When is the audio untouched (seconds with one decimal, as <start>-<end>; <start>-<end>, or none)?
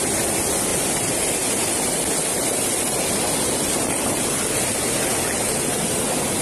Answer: 0.0-6.4